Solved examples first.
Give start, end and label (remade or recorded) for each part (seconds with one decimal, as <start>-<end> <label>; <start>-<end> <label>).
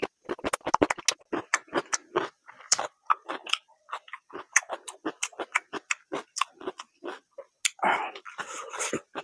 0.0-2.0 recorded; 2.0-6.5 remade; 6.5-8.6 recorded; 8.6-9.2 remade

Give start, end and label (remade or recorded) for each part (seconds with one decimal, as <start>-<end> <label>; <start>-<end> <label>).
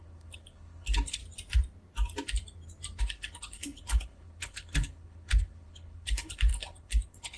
0.0-1.2 remade; 1.2-3.0 recorded; 3.0-7.4 remade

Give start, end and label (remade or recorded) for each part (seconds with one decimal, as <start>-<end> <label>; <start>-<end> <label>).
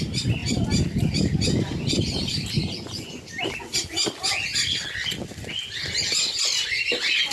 0.0-2.6 recorded; 2.6-3.2 remade; 3.2-7.3 recorded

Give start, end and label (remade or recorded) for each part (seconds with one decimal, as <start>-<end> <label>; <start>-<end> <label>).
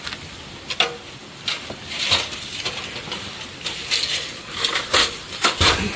0.0-6.0 recorded